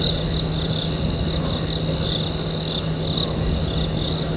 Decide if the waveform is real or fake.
real